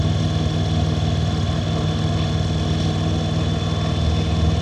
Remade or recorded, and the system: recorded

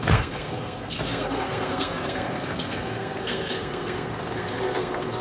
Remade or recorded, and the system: remade, codec, SNAC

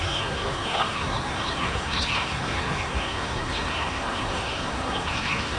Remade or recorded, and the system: remade, codec, SNAC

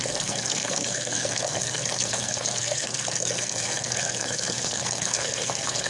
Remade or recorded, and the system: remade, codec, SNAC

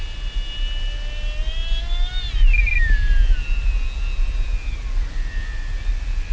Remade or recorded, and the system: recorded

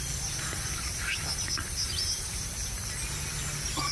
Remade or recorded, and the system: recorded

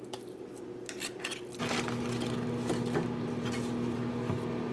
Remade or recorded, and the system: recorded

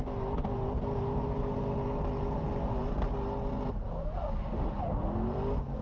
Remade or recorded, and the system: recorded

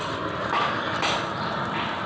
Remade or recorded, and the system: recorded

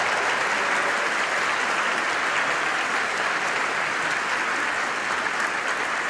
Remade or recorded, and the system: recorded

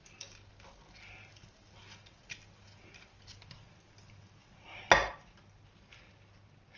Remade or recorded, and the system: recorded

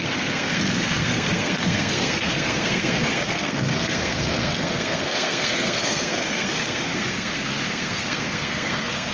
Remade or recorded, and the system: remade, codec, SNAC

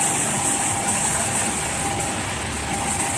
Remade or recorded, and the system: recorded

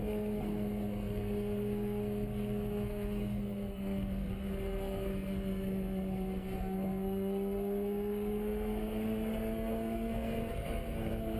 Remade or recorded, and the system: remade, codec, SNAC